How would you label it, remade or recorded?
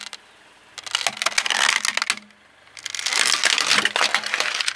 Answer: recorded